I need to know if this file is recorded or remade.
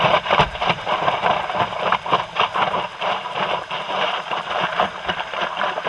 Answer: remade